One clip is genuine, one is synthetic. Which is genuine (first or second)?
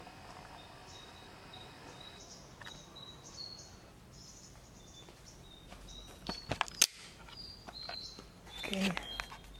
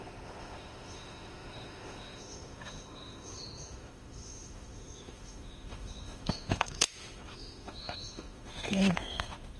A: first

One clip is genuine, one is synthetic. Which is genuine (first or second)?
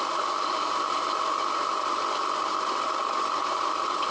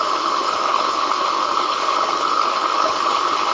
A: first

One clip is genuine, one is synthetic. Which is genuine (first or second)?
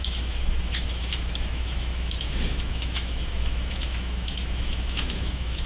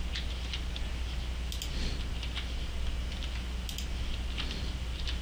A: second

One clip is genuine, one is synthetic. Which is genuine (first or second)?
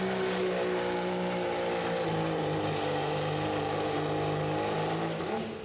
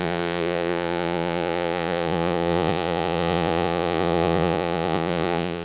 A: first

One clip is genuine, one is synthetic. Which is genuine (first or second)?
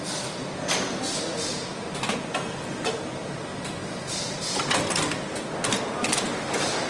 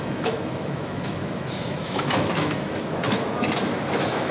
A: first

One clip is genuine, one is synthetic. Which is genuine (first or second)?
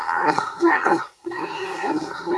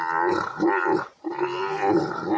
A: second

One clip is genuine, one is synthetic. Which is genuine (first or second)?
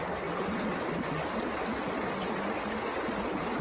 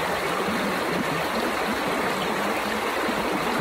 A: first